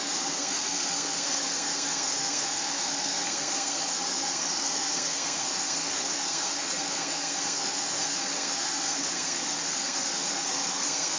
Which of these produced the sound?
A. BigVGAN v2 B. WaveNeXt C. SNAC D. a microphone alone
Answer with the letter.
C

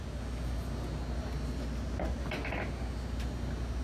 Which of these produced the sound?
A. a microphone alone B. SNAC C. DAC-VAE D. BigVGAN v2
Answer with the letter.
A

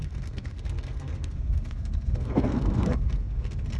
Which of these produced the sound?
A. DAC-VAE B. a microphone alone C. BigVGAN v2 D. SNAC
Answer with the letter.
D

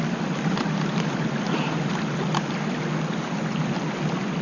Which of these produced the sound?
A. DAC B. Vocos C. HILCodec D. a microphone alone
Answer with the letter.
D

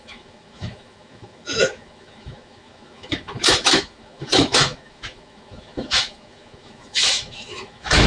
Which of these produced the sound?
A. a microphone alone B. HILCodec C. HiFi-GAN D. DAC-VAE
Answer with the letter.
D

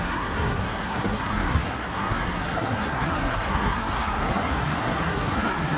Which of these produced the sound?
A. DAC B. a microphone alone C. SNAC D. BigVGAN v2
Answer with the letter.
C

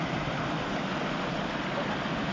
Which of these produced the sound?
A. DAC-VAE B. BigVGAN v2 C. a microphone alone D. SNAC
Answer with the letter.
C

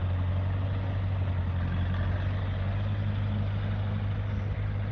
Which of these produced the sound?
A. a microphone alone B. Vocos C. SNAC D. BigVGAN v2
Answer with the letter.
A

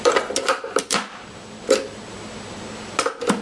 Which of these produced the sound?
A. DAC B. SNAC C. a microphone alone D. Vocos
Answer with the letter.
C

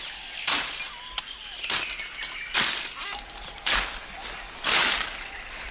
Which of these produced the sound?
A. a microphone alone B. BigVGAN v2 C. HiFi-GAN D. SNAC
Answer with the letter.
A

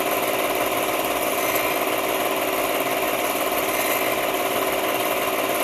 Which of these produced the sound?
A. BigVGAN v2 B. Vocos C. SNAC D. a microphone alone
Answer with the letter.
D